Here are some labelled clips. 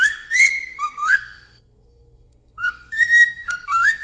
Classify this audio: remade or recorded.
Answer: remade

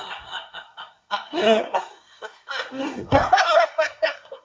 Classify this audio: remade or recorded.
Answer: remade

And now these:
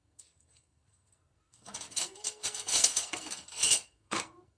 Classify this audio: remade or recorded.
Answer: remade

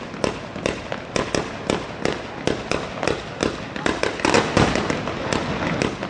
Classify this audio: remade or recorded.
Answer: recorded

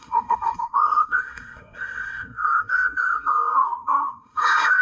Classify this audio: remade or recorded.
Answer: remade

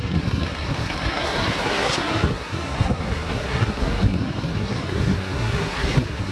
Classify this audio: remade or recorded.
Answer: remade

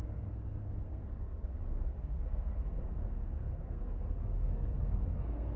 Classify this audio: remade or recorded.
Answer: remade